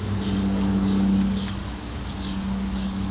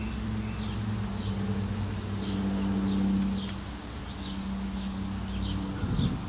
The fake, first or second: first